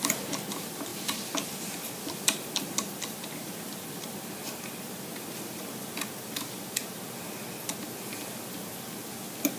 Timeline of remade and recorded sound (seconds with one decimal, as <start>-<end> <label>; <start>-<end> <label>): 0.0-6.8 remade; 6.8-9.0 recorded; 9.0-9.6 remade